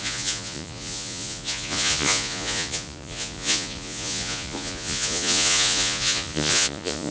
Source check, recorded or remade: remade